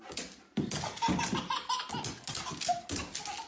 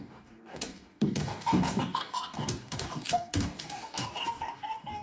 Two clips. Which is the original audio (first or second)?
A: first